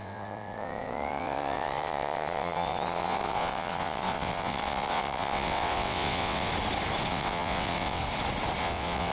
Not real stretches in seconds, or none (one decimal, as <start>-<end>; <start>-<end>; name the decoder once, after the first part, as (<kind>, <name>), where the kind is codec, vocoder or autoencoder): 0.0-6.5 (vocoder, WaveNeXt); 7.1-8.0; 8.6-9.1